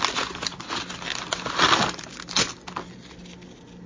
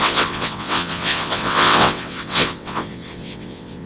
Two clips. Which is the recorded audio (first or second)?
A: first